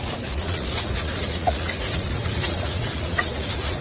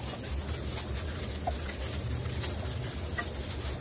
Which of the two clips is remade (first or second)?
first